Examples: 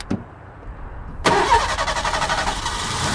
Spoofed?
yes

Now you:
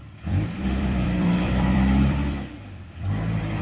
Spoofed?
yes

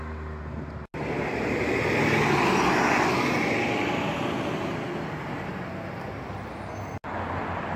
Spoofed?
no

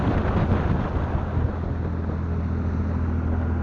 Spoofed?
no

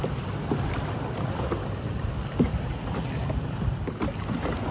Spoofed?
yes